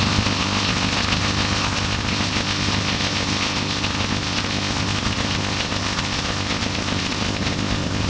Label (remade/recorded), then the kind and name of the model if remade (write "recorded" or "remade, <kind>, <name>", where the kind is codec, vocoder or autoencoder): remade, codec, ZipCodec